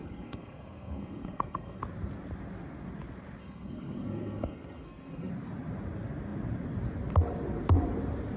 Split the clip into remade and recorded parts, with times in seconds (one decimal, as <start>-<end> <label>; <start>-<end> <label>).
0.0-1.8 remade; 1.8-3.4 recorded; 3.4-5.3 remade; 5.3-8.4 recorded